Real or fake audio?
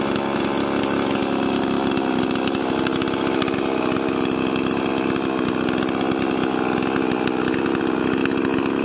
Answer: real